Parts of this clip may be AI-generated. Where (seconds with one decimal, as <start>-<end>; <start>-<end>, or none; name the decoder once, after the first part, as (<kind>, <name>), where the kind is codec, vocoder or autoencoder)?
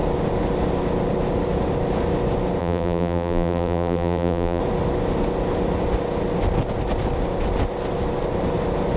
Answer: 2.6-4.6 (vocoder, BigVGAN v2)